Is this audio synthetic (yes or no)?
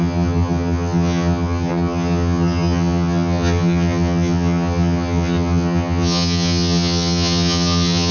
yes